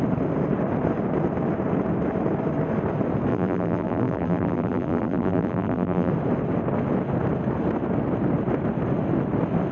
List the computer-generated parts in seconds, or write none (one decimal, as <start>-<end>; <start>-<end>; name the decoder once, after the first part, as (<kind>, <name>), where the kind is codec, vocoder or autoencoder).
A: 3.3-6.1 (vocoder, BigVGAN v2)